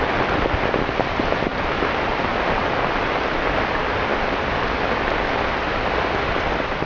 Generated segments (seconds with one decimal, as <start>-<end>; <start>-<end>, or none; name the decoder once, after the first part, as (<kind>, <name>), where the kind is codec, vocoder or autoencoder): none